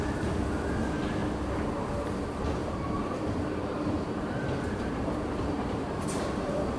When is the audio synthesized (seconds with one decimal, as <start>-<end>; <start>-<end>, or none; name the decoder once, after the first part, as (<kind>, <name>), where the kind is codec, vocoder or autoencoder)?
2.6-6.8 (vocoder, BigVGAN v2)